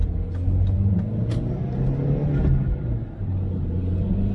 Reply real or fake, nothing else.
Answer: real